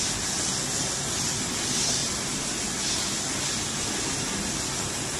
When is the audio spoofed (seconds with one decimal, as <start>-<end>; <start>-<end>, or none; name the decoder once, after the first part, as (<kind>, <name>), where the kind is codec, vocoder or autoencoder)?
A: none